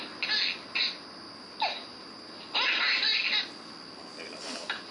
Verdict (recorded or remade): recorded